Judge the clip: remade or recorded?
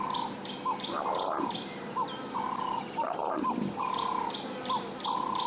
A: recorded